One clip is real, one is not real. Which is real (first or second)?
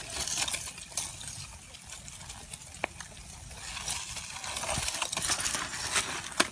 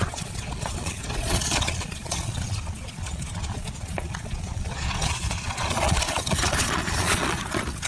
first